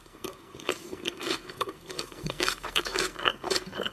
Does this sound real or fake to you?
fake